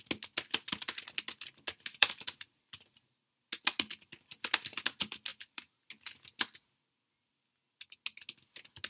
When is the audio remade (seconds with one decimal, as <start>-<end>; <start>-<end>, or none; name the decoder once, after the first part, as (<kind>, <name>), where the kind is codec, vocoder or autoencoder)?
2.0-3.1 (vocoder, BigVGAN v2); 5.3-5.9